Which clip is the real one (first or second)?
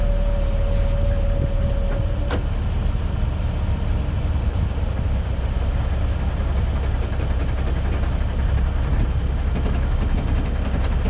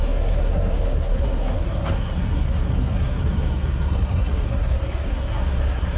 first